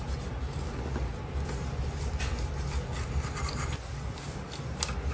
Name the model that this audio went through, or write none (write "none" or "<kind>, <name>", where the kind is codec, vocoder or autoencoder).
none